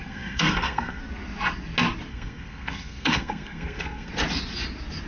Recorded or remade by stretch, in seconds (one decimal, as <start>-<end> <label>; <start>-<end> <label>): 0.0-1.0 remade; 1.0-2.1 recorded; 2.1-4.1 remade; 4.1-5.1 recorded